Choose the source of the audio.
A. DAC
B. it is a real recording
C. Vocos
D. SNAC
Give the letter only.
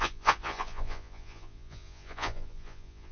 C